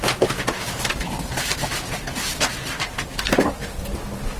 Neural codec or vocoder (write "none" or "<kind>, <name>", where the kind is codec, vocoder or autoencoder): none